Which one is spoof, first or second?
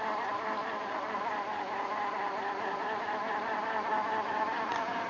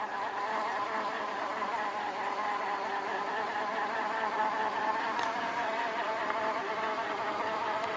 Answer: second